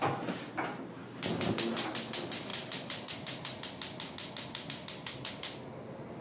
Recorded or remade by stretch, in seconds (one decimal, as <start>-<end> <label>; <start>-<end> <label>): 0.0-6.2 recorded